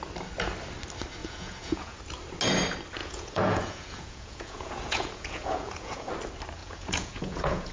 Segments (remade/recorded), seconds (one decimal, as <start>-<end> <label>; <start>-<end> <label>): 0.0-1.2 recorded; 1.2-2.0 remade; 2.0-3.0 recorded; 3.0-6.1 remade; 6.1-6.6 recorded; 6.6-7.7 remade